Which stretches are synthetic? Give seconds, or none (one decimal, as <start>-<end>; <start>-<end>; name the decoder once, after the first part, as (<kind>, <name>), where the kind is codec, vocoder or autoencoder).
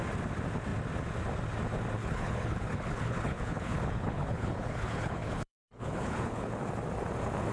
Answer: 2.0-6.5 (codec, HILCodec)